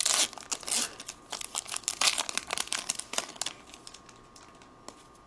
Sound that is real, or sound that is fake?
real